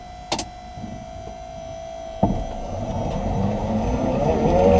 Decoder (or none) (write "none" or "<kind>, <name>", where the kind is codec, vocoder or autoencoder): none